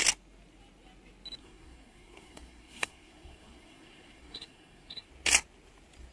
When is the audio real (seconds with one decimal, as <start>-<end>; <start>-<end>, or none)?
0.0-1.4; 5.1-6.1